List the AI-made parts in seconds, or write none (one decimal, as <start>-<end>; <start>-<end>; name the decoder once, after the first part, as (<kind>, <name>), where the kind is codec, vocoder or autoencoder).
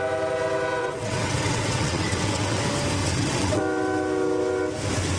0.8-2.6 (vocoder, WaveNeXt); 3.0-3.6